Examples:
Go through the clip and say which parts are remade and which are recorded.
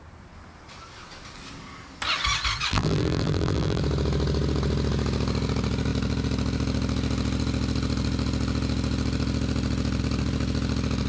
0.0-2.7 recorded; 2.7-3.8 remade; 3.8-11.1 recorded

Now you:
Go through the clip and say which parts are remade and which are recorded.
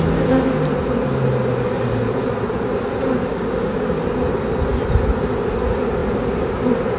0.0-3.3 recorded; 3.3-4.0 remade; 4.0-7.0 recorded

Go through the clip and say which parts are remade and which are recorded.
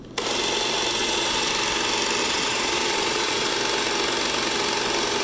0.0-1.0 recorded; 1.0-1.5 remade; 1.5-2.2 recorded; 2.2-3.5 remade; 3.5-5.2 recorded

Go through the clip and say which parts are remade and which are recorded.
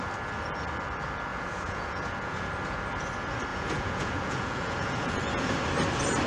0.0-1.3 recorded; 1.3-2.5 remade; 2.5-3.5 recorded; 3.5-5.5 remade; 5.5-6.3 recorded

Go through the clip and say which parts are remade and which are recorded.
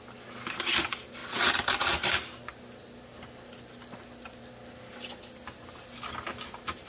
0.0-6.9 recorded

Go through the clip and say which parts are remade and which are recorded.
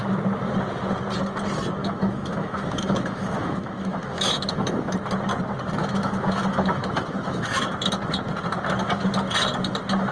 0.0-1.8 recorded; 1.8-4.9 remade; 4.9-5.8 recorded; 5.8-7.7 remade; 7.7-10.1 recorded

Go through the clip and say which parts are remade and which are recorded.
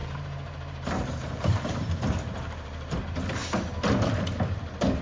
0.0-3.0 remade; 3.0-5.0 recorded